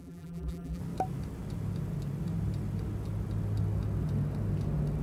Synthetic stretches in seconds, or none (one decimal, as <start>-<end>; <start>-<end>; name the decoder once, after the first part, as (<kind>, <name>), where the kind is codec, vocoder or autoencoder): 0.0-0.8 (vocoder, BigVGAN v2)